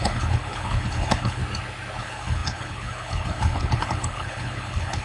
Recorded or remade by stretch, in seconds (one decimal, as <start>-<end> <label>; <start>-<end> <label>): 0.0-1.4 remade; 1.4-2.0 recorded; 2.0-5.0 remade